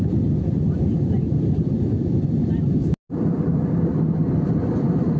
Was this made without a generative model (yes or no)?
yes